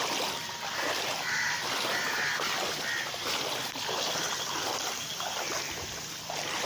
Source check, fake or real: fake